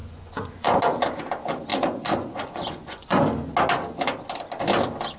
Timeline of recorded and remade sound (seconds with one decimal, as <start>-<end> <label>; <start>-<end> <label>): 0.0-0.8 remade; 0.8-1.7 recorded; 1.7-3.2 remade; 3.2-5.2 recorded